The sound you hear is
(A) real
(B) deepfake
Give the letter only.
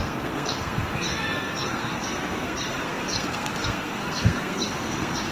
B